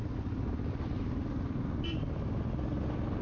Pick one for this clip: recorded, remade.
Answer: recorded